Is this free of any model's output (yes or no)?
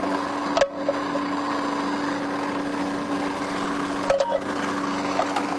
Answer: yes